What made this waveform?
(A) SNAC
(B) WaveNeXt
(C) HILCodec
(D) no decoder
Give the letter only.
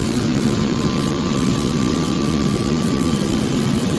B